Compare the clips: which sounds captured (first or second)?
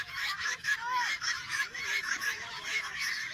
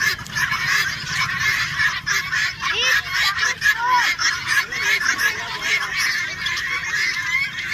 second